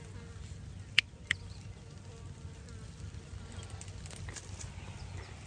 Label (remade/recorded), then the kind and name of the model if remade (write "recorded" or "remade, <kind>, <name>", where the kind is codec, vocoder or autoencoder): recorded